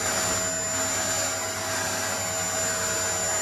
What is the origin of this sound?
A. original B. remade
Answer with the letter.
A